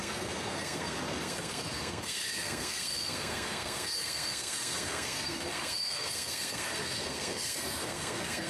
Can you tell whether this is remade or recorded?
remade